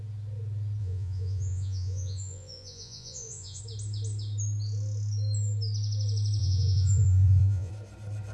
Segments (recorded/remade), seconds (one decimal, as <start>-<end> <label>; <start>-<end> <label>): 0.0-0.8 recorded; 0.8-3.6 remade; 3.6-6.4 recorded; 6.4-7.7 remade; 7.7-8.3 recorded